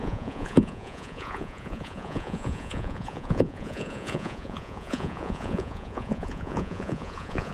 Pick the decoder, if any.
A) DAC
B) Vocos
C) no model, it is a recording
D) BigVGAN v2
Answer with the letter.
B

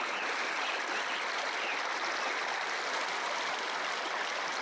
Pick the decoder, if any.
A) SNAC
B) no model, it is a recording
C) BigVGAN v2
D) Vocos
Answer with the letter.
B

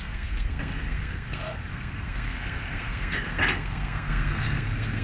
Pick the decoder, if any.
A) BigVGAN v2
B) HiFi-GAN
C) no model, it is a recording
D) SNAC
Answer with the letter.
D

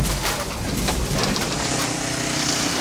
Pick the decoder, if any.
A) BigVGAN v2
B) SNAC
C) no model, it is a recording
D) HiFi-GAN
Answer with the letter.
A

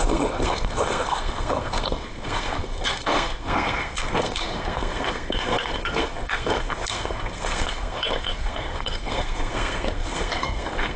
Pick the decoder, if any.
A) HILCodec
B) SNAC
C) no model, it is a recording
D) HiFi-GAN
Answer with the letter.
B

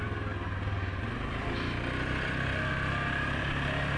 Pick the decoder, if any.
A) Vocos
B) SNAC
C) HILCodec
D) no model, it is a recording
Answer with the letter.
D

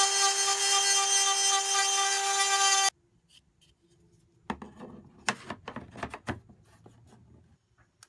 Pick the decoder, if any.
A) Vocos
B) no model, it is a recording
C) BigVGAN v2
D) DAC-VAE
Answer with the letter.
B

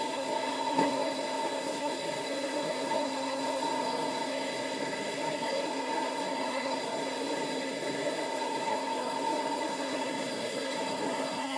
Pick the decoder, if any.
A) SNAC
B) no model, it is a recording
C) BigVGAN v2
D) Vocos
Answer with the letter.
A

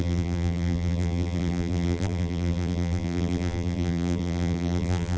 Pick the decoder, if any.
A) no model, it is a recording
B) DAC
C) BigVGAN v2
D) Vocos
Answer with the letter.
C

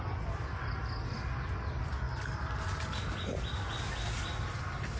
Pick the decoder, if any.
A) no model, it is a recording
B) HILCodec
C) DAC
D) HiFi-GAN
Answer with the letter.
A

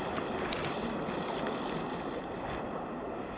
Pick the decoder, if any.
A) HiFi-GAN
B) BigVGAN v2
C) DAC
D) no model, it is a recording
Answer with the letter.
D